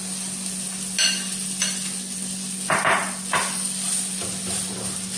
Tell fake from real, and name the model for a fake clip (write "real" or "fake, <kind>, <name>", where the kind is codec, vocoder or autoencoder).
real